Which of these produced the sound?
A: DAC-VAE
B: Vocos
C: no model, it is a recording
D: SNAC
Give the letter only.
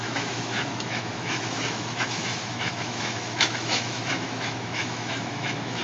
A